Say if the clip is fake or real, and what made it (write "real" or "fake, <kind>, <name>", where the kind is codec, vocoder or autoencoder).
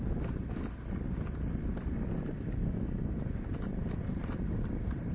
real